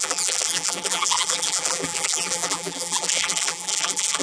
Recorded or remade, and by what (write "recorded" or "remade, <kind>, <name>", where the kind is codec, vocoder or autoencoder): remade, vocoder, BigVGAN v2